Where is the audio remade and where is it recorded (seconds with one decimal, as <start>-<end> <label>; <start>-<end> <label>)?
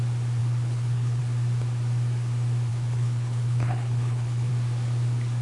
0.0-0.4 recorded; 0.4-1.2 remade; 1.2-2.7 recorded; 2.7-4.5 remade; 4.5-5.4 recorded